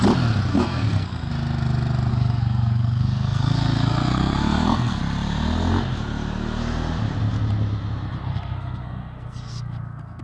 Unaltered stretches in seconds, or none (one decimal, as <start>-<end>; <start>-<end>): 0.0-0.5; 1.3-2.1; 5.0-8.3